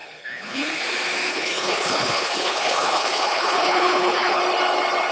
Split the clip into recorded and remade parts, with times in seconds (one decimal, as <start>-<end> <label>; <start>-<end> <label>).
0.0-0.8 remade; 0.8-1.3 recorded; 1.3-4.4 remade; 4.4-5.1 recorded